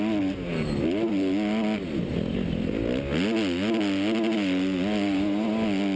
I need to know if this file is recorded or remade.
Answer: recorded